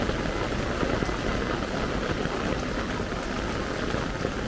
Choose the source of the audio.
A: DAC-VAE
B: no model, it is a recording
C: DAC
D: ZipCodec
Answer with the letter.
B